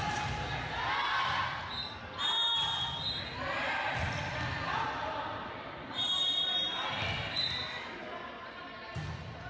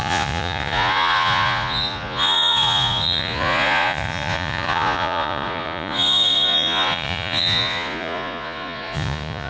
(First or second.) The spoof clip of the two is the second